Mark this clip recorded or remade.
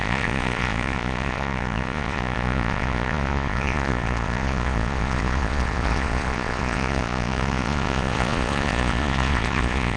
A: remade